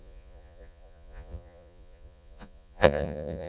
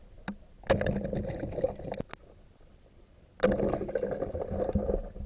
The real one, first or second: second